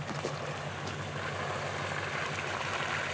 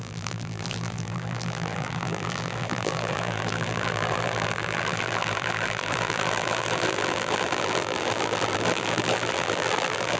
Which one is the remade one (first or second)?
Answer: second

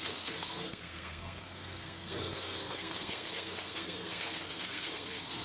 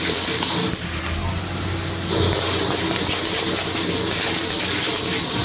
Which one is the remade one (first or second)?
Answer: first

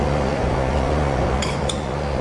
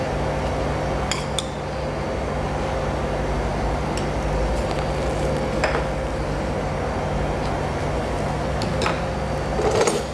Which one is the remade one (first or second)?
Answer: first